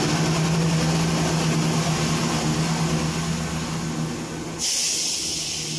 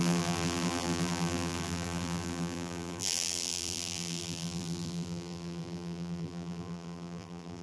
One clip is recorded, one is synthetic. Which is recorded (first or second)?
first